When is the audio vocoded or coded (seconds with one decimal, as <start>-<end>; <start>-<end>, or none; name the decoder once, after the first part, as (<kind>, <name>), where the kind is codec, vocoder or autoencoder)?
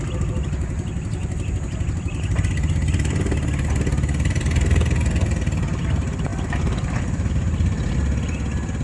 1.2-2.4 (vocoder, BigVGAN v2); 6.3-7.3